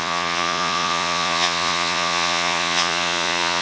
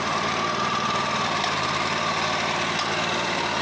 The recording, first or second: second